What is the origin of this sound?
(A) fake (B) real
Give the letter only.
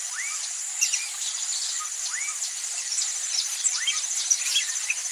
B